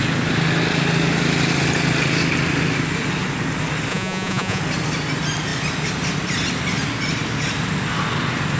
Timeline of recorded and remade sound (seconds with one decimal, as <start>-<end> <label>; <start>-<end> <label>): 0.0-3.9 recorded; 3.9-4.6 remade; 4.6-8.6 recorded